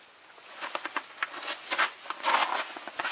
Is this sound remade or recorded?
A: remade